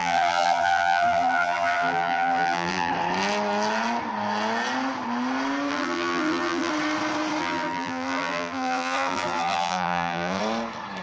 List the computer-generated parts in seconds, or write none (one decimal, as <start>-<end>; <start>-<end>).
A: 0.0-2.9; 5.7-6.7; 7.4-10.4